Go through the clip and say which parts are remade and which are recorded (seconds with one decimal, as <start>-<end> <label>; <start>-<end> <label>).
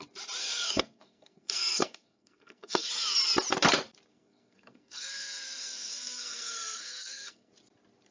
0.0-0.4 recorded; 0.4-2.9 remade; 2.9-4.1 recorded; 4.1-7.5 remade; 7.5-8.1 recorded